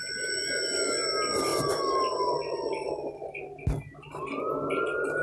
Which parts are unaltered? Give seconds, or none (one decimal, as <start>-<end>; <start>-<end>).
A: 0.0-5.2